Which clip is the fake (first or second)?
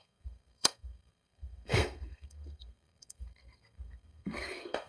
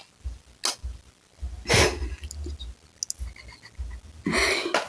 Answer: first